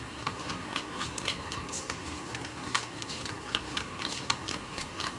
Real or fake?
fake